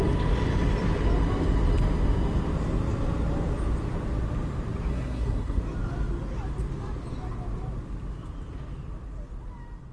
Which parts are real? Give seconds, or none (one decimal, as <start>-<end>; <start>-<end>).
0.0-4.9; 5.6-9.9